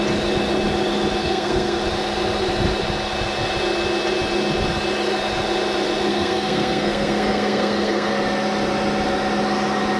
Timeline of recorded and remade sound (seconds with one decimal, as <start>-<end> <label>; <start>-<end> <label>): 0.0-1.2 recorded; 1.2-1.8 remade; 1.8-6.1 recorded; 6.1-8.1 remade; 8.1-10.0 recorded